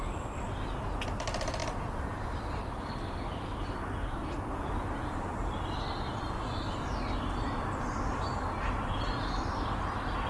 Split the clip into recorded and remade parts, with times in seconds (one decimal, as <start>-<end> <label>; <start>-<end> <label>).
0.0-10.3 recorded